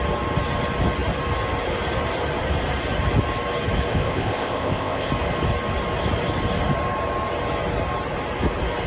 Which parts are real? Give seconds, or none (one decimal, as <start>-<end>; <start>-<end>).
0.0-3.9; 5.1-8.9